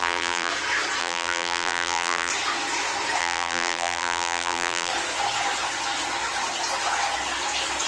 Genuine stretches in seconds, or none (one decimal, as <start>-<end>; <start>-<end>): 0.5-1.0; 2.3-3.2; 4.9-7.9